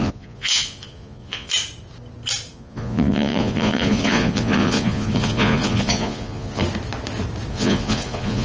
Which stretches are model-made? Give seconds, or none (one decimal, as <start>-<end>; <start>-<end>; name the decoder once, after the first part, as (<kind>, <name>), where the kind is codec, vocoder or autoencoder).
0.0-1.5 (vocoder, Vocos); 2.5-6.6; 7.5-8.4